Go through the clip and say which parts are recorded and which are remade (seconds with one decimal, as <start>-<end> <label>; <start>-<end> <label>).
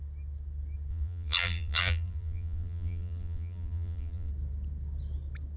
0.0-0.9 recorded; 0.9-4.3 remade; 4.3-5.6 recorded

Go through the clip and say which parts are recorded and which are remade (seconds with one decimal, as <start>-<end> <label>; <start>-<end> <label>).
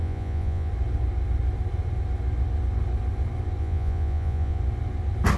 0.0-0.7 remade; 0.7-3.6 recorded; 3.6-4.6 remade; 4.6-5.4 recorded